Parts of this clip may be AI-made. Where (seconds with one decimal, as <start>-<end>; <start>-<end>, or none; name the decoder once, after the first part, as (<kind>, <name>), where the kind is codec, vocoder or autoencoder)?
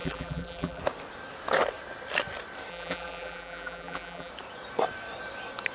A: 0.0-0.8 (vocoder, BigVGAN v2); 2.7-4.3